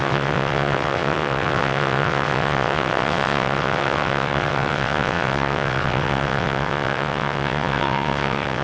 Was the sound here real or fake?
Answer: fake